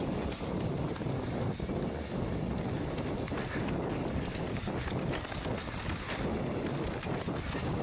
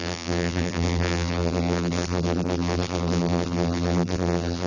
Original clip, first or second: first